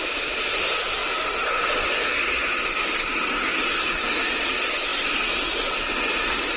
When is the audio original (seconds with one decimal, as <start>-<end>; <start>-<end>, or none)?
0.0-6.6